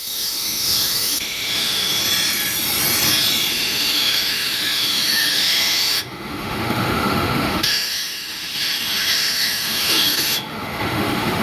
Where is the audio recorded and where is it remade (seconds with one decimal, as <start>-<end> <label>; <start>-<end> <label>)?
0.0-2.0 remade; 2.0-3.5 recorded; 3.5-11.4 remade